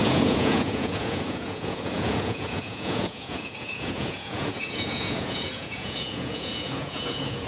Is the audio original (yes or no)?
no